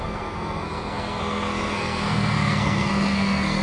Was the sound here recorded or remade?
remade